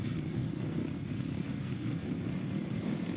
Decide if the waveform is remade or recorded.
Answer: remade